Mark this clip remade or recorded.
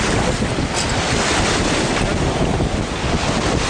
recorded